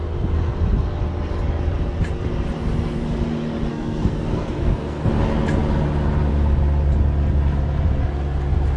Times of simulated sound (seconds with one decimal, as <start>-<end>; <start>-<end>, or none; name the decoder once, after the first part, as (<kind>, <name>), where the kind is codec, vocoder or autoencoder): 3.7-5.1 (codec, SNAC)